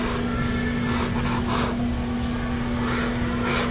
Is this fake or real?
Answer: real